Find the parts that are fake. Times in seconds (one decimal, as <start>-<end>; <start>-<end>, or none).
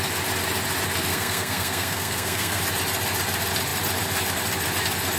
1.1-2.6